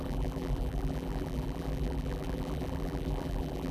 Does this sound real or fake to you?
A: fake